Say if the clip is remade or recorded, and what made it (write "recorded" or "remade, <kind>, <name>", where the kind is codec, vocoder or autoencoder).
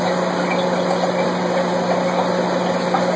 recorded